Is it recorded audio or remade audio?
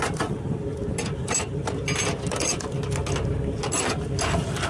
recorded